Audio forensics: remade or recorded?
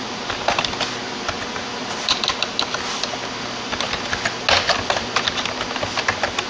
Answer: recorded